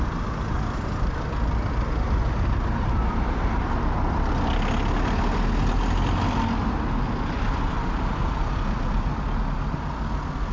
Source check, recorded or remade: recorded